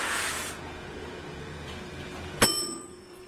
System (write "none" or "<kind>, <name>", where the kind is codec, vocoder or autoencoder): vocoder, Vocos